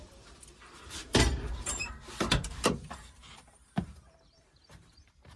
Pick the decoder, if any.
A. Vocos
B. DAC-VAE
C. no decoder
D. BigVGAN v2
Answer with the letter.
D